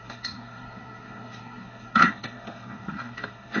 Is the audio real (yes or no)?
no